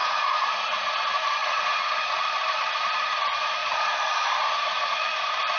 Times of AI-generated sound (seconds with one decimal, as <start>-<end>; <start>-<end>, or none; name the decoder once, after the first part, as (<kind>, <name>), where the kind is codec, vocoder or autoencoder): 0.0-0.9 (vocoder, Vocos); 1.4-1.9